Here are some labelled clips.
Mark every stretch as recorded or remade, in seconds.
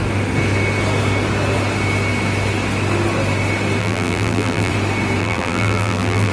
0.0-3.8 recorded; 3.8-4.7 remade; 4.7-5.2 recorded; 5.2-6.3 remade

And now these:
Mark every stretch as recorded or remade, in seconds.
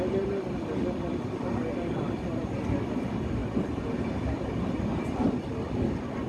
0.0-3.4 recorded; 3.4-4.5 remade; 4.5-6.3 recorded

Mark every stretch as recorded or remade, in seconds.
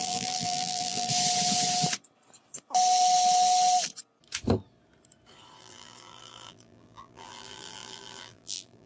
0.0-1.1 remade; 1.1-5.6 recorded; 5.6-8.9 remade